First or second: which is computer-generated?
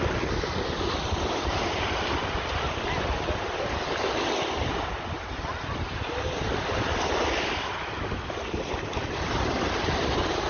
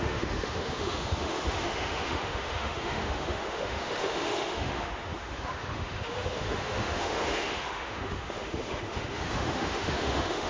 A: second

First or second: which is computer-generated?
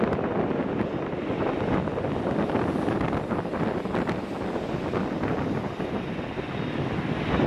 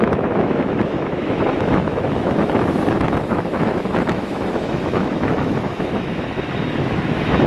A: second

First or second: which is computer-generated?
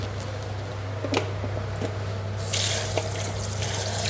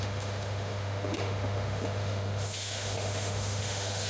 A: second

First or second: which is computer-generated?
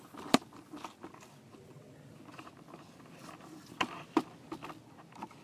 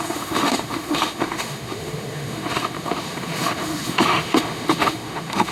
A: second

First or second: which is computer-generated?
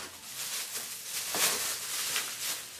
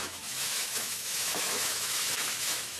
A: second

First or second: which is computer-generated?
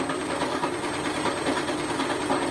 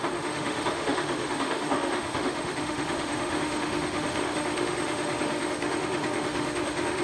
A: second